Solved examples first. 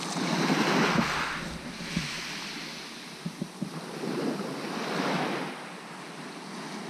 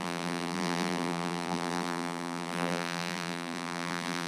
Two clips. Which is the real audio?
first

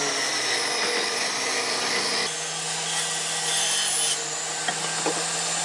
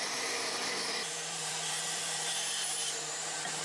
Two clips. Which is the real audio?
first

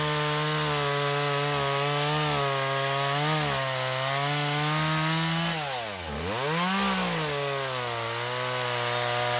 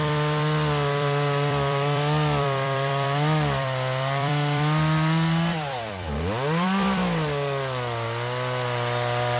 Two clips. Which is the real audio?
first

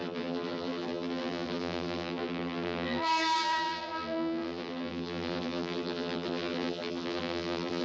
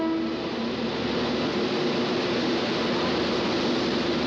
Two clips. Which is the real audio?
second